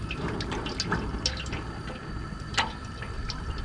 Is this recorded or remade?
recorded